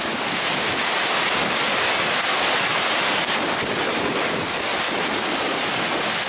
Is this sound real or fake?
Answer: real